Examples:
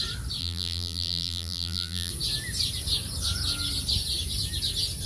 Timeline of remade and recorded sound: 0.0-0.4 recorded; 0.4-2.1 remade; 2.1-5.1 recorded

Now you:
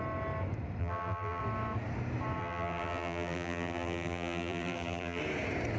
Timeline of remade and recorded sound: 0.0-0.8 recorded; 0.8-1.4 remade; 1.4-2.4 recorded; 2.4-5.2 remade; 5.2-5.8 recorded

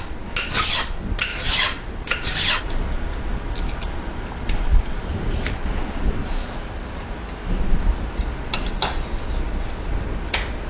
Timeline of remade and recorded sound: 0.0-1.3 recorded; 1.3-2.9 remade; 2.9-4.7 recorded; 4.7-7.8 remade; 7.8-10.7 recorded

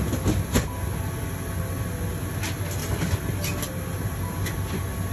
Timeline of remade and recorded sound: 0.0-5.1 recorded

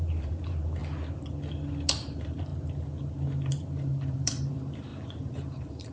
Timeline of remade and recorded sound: 0.0-0.8 remade; 0.8-1.9 recorded; 1.9-2.5 remade; 2.5-3.5 recorded; 3.5-5.9 remade